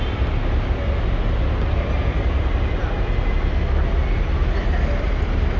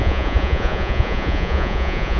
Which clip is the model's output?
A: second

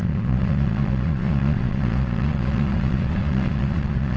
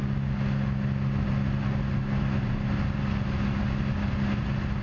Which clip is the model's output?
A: first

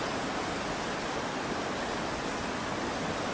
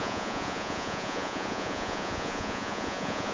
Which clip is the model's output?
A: second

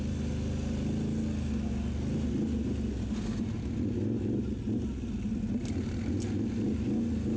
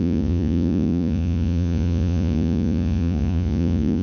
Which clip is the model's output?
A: second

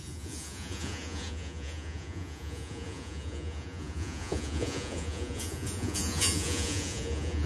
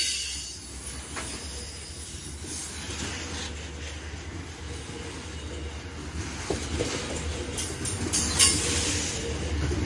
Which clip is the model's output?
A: first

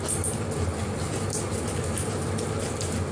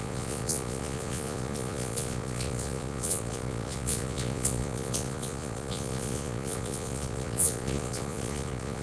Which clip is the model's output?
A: second